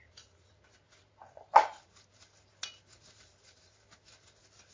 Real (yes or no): yes